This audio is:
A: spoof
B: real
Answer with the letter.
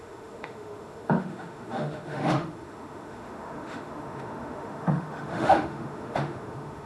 A